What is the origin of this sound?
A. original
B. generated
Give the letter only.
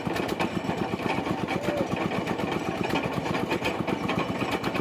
A